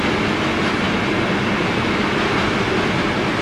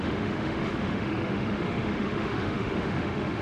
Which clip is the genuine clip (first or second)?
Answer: first